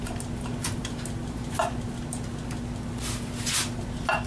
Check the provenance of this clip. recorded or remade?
recorded